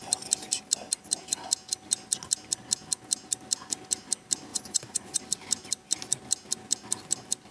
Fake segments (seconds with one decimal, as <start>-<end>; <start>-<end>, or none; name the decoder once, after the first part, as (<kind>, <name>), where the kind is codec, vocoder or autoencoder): 4.5-5.2 (vocoder, Vocos)